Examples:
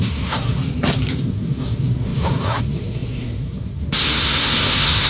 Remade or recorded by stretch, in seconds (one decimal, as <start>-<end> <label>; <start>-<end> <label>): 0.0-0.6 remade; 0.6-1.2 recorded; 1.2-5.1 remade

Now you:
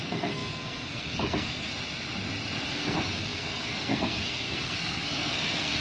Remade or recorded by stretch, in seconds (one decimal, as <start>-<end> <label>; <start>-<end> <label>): 0.0-1.7 remade; 1.7-2.7 recorded; 2.7-5.8 remade

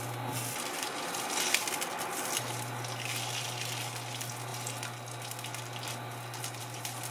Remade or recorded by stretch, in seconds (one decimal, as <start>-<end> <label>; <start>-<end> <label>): 0.0-7.1 recorded

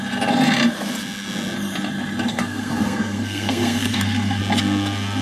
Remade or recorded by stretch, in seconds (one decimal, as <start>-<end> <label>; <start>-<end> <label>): 0.0-2.3 recorded; 2.3-4.4 remade; 4.4-5.2 recorded

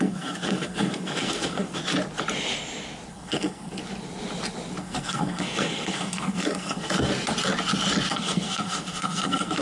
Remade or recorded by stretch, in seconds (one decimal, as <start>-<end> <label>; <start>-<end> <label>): 0.0-1.8 remade; 1.8-3.1 recorded; 3.1-3.8 remade; 3.8-4.8 recorded; 4.8-7.1 remade; 7.1-8.1 recorded; 8.1-9.6 remade

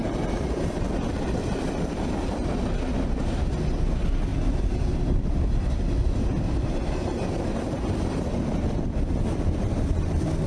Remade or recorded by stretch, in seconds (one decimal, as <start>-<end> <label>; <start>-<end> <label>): 0.0-10.5 recorded

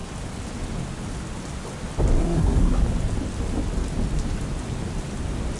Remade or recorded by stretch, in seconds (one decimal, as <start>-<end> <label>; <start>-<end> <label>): 0.0-2.2 recorded; 2.2-2.8 remade; 2.8-5.6 recorded

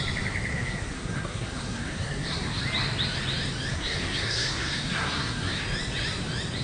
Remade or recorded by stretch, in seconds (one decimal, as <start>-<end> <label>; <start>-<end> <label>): 0.0-0.5 recorded; 0.5-2.6 remade; 2.6-3.7 recorded; 3.7-5.6 remade; 5.6-6.6 recorded